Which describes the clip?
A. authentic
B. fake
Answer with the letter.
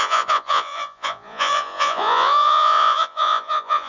B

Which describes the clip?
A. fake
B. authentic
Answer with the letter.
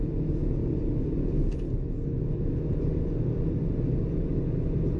B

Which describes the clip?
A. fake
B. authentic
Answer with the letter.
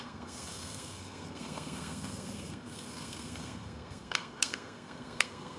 A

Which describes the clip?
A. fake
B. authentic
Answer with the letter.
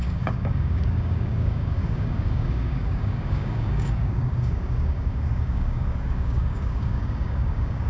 A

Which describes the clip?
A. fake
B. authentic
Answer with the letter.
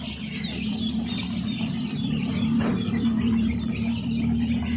A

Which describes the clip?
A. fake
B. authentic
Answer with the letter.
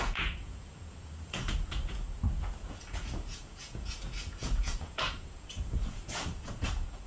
A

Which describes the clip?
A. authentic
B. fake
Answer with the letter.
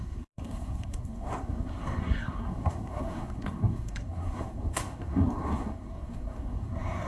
B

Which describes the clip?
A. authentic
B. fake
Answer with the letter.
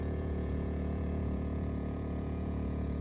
B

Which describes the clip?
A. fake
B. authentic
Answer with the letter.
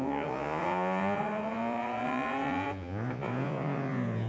A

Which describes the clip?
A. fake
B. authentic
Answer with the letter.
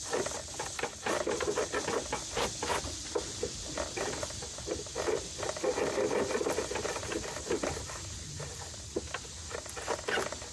B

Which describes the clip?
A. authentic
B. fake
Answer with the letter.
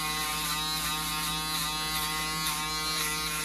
A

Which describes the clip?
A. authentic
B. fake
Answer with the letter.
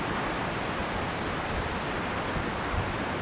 A